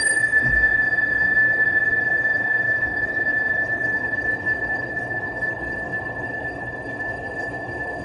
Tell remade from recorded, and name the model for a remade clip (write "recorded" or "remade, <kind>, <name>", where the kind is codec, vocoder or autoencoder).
remade, codec, HILCodec